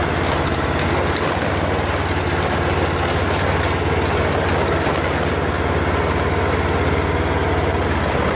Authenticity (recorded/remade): recorded